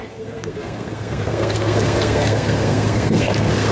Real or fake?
fake